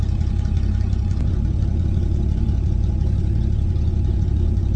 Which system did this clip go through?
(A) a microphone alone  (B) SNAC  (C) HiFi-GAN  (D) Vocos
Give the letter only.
D